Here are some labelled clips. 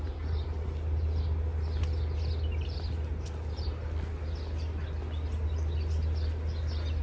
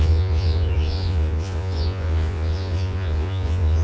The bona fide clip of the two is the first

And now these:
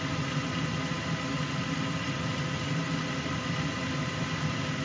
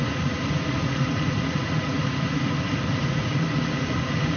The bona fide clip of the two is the first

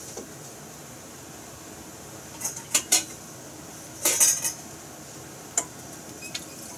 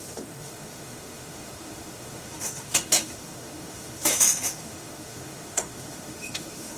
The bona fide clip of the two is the first